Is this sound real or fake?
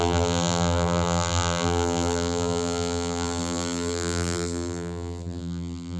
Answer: fake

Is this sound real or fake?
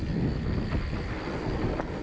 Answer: real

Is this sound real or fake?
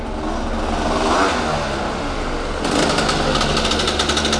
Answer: real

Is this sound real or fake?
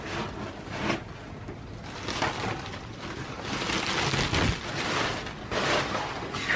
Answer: real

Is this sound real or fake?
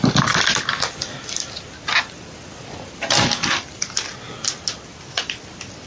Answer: real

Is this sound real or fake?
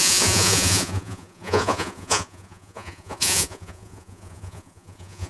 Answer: fake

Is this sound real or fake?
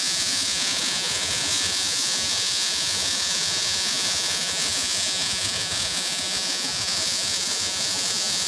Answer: fake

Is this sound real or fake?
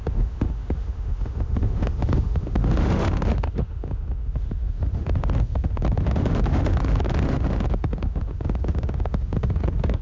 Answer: fake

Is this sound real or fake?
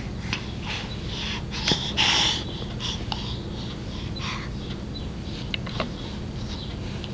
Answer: real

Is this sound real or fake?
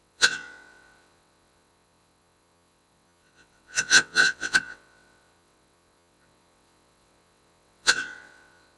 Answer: fake